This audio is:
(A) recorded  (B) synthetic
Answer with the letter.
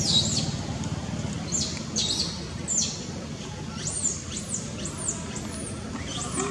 A